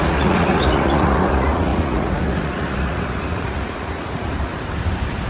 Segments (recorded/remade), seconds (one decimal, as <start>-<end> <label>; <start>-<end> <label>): 0.0-4.5 remade; 4.5-5.3 recorded